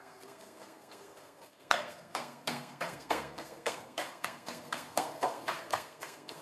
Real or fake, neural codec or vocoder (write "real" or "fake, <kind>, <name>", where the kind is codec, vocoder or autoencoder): fake, codec, SNAC